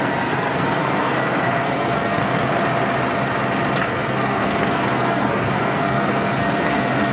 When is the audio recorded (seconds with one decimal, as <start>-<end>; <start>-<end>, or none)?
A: 2.5-3.8